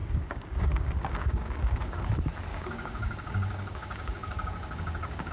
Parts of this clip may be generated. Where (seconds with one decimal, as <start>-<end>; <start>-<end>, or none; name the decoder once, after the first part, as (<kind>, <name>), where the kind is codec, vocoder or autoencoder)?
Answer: 0.0-2.1 (codec, DAC); 2.5-5.3